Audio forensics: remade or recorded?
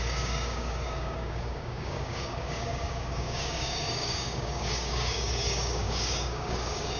remade